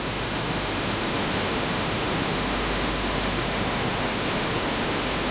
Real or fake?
fake